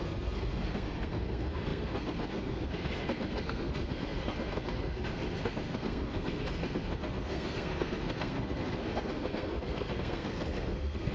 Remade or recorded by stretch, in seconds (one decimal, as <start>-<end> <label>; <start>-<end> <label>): 0.0-11.1 remade